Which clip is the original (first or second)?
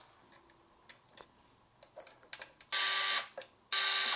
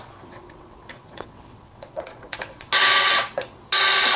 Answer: first